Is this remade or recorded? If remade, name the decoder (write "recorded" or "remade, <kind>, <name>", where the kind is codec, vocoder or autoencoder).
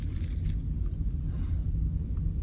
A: recorded